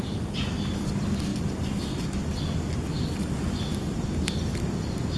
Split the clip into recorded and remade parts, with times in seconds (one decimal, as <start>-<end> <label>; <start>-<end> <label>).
0.0-5.2 recorded